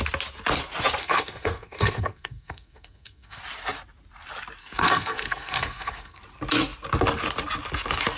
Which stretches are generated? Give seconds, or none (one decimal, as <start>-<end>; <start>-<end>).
1.0-3.4; 4.6-6.2